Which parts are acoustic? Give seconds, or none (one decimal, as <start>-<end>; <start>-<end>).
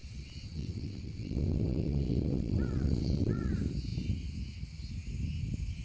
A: 3.5-5.8